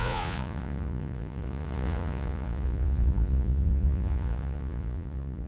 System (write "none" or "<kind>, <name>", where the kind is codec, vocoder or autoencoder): vocoder, Vocos